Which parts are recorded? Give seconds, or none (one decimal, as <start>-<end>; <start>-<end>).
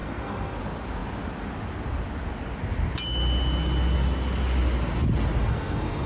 0.6-5.4